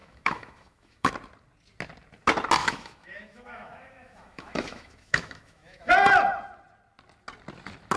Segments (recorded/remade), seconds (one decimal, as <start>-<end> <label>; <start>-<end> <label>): 0.0-1.1 remade; 1.1-2.6 recorded; 2.6-5.9 remade; 5.9-8.0 recorded